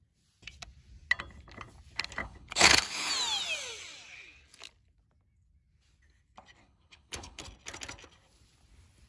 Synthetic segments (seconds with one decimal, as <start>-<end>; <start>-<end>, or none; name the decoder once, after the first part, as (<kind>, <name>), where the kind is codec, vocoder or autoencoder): 2.2-3.1 (codec, HILCodec); 6.6-7.4